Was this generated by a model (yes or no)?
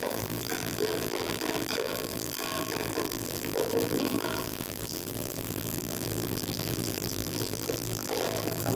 yes